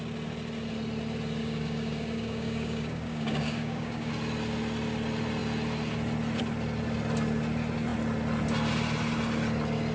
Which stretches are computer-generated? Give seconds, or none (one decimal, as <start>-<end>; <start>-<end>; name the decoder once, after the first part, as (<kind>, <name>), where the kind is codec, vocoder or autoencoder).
1.4-4.1 (codec, DAC)